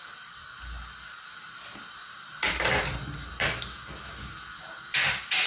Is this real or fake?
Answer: real